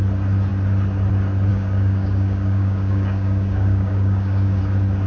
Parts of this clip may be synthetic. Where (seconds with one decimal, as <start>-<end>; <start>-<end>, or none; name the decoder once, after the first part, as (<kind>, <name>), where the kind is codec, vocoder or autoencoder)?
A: 1.5-4.6 (codec, DAC)